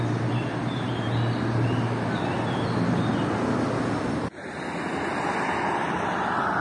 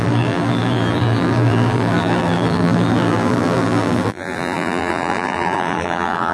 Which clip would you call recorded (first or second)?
first